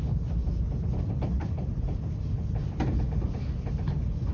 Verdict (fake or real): real